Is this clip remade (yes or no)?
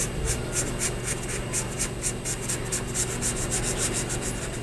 no